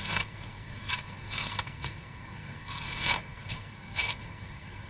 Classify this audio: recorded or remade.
remade